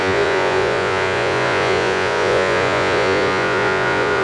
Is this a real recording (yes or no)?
no